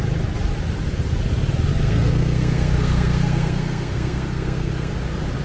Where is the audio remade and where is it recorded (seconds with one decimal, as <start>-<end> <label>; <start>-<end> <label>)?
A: 0.0-1.7 recorded; 1.7-4.9 remade; 4.9-5.4 recorded